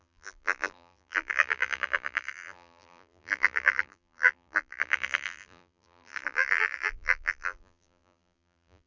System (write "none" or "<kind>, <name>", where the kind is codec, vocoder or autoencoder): vocoder, BigVGAN v2